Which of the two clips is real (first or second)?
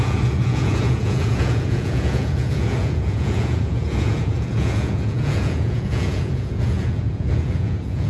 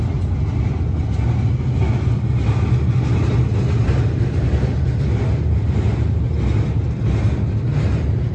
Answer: second